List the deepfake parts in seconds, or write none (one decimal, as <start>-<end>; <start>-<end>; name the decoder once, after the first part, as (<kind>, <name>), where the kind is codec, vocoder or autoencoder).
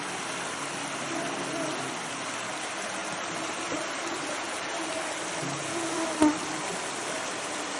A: 3.0-4.9 (vocoder, BigVGAN v2)